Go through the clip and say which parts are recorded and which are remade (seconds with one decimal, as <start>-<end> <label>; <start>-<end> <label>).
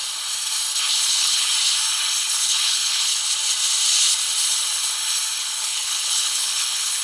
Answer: 0.0-0.9 recorded; 0.9-1.5 remade; 1.5-2.2 recorded; 2.2-3.2 remade; 3.2-5.4 recorded; 5.4-7.0 remade